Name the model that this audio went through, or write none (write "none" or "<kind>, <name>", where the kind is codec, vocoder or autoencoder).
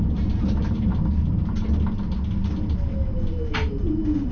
none